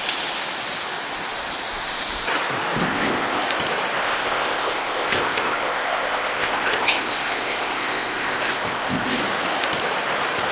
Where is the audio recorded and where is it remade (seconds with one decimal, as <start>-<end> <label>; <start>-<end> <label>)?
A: 0.0-2.8 recorded; 2.8-3.4 remade; 3.4-4.0 recorded; 4.0-9.2 remade; 9.2-10.5 recorded